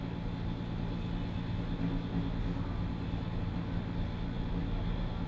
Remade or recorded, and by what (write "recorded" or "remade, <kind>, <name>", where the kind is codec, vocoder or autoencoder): recorded